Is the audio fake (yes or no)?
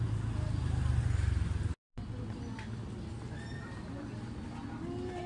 no